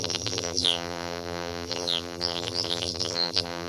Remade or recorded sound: remade